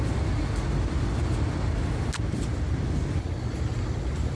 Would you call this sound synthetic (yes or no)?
no